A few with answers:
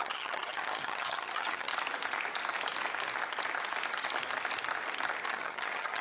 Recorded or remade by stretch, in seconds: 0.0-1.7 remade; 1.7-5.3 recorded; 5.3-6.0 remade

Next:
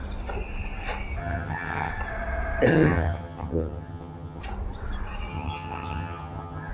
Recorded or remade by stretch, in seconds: 0.0-1.2 recorded; 1.2-1.9 remade; 1.9-2.7 recorded; 2.7-4.4 remade; 4.4-5.3 recorded; 5.3-6.7 remade